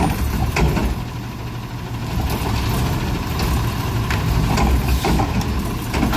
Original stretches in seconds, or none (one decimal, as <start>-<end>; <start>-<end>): 0.0-6.2